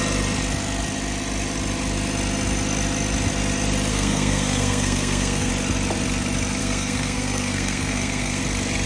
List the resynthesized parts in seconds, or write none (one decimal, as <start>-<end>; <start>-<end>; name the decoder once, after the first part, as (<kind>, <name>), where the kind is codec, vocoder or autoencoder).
3.9-5.5 (codec, SNAC); 6.6-8.4